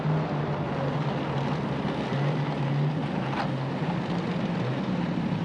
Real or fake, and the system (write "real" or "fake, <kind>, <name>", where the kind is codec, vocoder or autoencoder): real